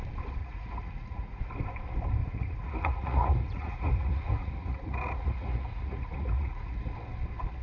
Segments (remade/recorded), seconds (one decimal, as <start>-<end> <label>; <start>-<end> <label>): 0.0-0.4 recorded; 0.4-1.4 remade; 1.4-2.2 recorded; 2.2-6.8 remade; 6.8-7.6 recorded